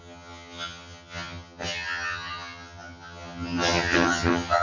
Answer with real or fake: fake